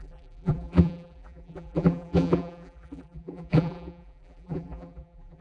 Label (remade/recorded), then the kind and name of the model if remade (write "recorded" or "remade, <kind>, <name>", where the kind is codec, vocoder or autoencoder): remade, vocoder, BigVGAN v2